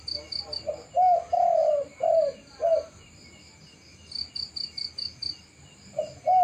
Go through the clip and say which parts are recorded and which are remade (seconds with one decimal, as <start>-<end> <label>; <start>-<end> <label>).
0.0-6.4 recorded